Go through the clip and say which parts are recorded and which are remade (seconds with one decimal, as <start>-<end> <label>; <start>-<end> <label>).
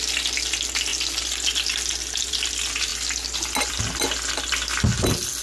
0.0-5.4 recorded